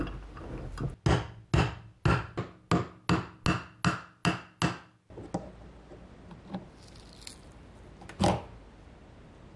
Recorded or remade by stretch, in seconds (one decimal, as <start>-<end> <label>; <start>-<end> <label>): 0.0-9.6 recorded